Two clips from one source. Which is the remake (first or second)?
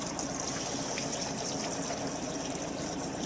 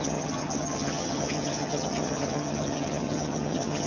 second